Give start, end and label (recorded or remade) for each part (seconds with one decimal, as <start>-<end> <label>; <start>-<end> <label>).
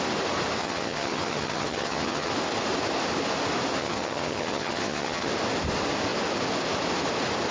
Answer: 0.0-0.6 recorded; 0.6-2.3 remade; 2.3-3.8 recorded; 3.8-5.3 remade; 5.3-7.5 recorded